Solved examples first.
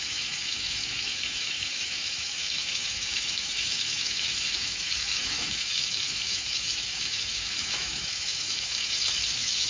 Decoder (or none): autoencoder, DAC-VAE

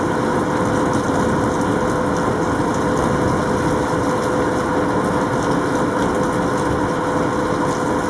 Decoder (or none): none